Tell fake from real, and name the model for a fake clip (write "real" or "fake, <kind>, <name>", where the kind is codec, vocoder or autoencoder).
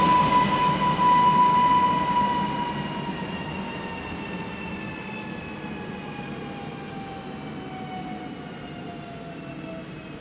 real